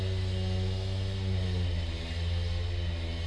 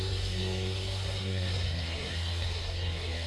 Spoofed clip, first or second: second